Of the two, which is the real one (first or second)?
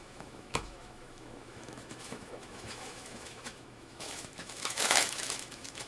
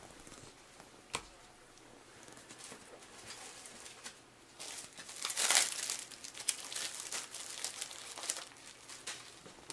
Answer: second